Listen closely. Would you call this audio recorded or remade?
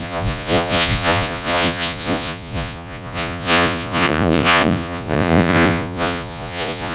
remade